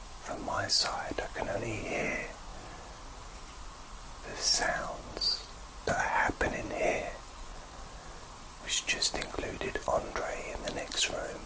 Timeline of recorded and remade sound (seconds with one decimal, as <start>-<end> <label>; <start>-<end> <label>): 0.0-5.8 recorded; 5.8-7.8 remade; 7.8-11.5 recorded